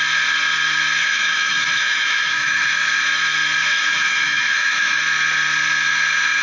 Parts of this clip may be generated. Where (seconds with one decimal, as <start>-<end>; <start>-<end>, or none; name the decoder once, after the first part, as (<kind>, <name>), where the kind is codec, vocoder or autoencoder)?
1.0-2.7 (autoencoder, DAC-VAE); 3.7-5.0